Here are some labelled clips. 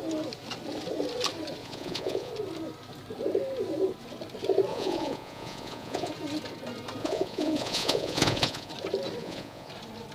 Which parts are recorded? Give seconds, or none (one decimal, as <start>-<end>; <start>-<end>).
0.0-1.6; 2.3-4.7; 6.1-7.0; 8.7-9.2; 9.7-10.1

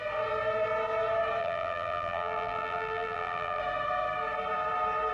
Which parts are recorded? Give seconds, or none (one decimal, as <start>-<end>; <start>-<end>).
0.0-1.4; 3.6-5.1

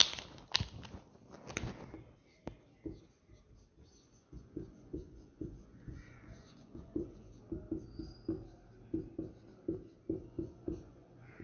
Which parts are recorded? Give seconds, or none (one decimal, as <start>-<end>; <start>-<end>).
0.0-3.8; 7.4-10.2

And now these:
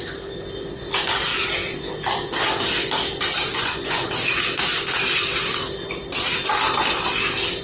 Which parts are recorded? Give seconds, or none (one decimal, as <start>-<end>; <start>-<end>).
0.0-3.5; 4.1-7.6